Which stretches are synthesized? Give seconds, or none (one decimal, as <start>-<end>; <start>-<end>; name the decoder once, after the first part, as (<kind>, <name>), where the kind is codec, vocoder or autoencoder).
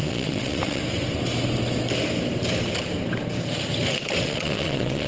0.0-0.8 (vocoder, WaveNeXt); 3.9-5.1